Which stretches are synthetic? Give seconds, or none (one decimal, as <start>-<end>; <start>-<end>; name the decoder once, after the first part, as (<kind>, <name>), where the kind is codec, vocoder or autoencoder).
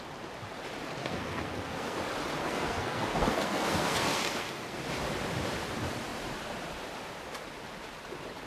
1.0-2.0 (codec, SNAC); 2.4-4.8